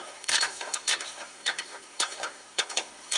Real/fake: fake